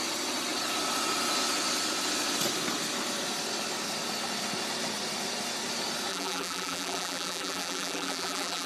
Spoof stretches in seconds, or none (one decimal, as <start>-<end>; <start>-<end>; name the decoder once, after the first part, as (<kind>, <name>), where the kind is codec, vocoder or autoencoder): 6.1-8.7 (vocoder, BigVGAN v2)

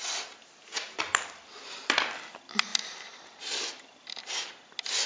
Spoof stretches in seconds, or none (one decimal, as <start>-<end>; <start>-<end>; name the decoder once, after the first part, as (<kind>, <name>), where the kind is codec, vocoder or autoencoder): 2.7-4.5 (vocoder, BigVGAN v2)